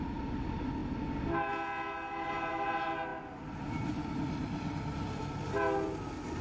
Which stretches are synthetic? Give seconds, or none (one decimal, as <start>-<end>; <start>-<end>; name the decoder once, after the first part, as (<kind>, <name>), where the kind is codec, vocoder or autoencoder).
none